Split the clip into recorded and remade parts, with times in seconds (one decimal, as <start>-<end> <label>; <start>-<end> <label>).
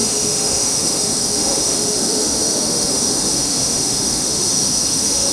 0.0-5.3 remade